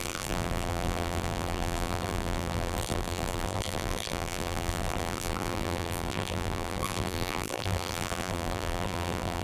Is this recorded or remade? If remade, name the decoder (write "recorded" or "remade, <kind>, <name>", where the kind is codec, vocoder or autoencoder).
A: remade, vocoder, BigVGAN v2